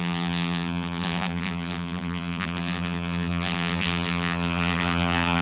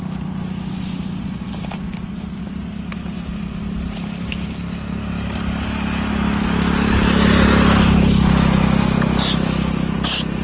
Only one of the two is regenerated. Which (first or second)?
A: first